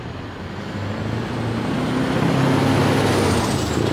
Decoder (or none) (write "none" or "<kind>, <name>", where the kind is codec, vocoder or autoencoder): none